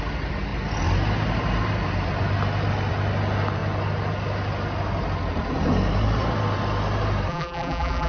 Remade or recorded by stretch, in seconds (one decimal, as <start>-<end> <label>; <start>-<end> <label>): 0.0-7.3 recorded; 7.3-8.1 remade